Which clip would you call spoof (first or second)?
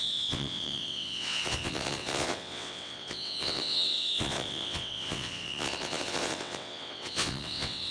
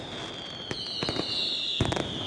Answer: first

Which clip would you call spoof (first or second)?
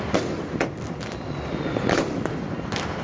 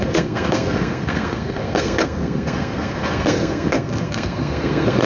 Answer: second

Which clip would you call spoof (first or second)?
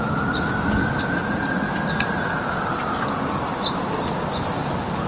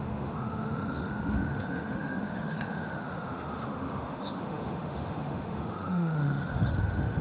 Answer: second